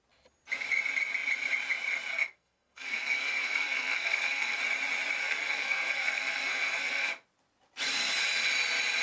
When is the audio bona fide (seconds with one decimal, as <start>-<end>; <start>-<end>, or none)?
0.0-2.1; 4.6-5.2; 7.1-9.0